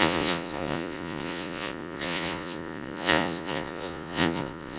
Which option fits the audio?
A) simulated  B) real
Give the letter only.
A